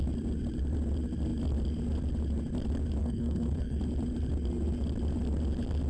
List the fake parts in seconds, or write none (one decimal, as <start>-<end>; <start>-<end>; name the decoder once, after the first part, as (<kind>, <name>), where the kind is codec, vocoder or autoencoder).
3.0-3.8 (codec, SNAC)